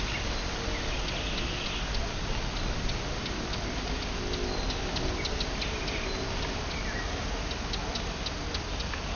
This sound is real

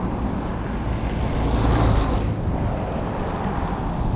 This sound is real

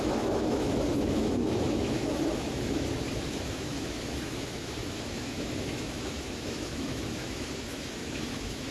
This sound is fake